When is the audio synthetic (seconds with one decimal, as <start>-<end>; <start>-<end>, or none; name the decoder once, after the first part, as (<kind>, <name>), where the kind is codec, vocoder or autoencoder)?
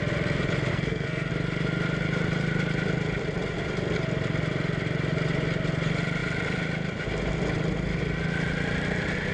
0.7-1.3 (codec, SNAC)